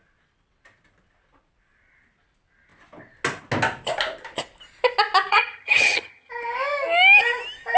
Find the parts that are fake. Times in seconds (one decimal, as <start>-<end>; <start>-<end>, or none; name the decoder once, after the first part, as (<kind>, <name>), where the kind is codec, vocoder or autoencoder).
5.3-6.3 (vocoder, HiFi-GAN)